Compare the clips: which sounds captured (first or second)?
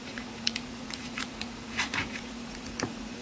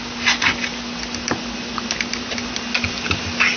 second